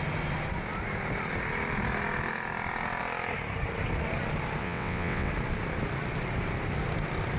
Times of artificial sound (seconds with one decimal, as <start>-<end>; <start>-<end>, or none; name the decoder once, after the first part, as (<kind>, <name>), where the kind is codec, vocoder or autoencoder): 4.6-5.3 (vocoder, WaveNeXt)